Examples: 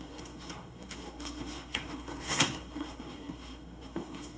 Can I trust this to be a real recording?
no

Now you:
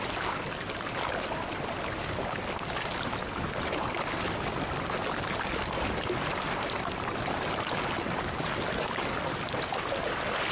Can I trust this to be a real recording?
yes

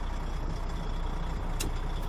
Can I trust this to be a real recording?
yes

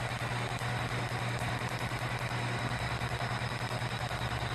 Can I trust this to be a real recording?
yes